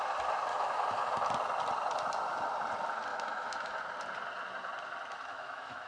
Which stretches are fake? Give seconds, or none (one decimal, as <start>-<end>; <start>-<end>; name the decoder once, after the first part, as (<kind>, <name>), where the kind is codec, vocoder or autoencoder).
0.5-1.1 (autoencoder, DAC-VAE); 3.1-3.8; 5.3-5.9

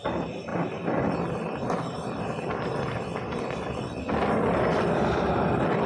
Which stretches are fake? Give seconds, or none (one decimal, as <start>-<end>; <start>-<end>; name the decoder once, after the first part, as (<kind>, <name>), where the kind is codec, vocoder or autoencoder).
none

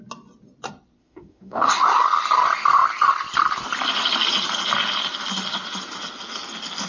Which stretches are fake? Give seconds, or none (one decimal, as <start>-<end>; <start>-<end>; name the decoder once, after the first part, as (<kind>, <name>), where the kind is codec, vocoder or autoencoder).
1.0-1.7 (autoencoder, DAC-VAE)

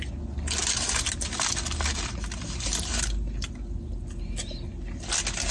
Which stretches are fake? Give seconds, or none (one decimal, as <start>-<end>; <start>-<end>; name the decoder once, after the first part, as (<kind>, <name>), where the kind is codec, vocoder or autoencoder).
none

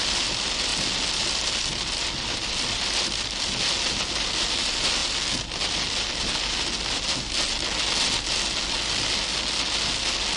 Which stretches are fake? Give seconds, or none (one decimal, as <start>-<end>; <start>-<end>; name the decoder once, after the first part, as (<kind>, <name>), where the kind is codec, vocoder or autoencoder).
none

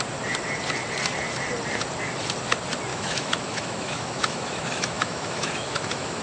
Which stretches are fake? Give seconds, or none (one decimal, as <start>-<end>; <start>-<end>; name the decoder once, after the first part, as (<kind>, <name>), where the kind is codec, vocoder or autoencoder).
2.9-6.2 (autoencoder, DAC-VAE)

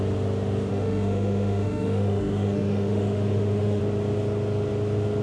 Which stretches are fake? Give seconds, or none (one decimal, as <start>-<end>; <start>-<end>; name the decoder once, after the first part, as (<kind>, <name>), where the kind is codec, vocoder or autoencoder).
0.7-3.8 (autoencoder, DAC-VAE)